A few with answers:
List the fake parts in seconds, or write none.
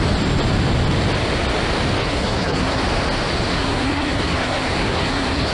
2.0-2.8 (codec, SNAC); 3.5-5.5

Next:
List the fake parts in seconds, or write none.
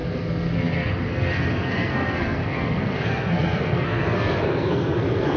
0.0-5.4 (codec, SNAC)